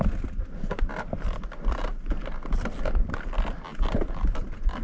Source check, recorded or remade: recorded